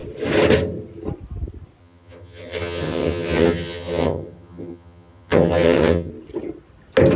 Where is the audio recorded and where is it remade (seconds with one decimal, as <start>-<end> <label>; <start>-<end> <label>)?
0.0-1.8 recorded; 1.8-6.1 remade; 6.1-7.2 recorded